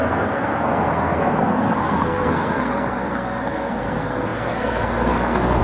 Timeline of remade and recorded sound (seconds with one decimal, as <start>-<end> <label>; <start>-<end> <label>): 0.0-5.6 remade